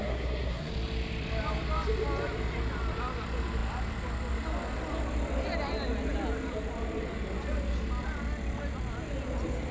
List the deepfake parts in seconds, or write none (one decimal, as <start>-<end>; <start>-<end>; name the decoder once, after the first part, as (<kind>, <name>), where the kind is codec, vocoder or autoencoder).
0.0-0.7 (codec, SNAC)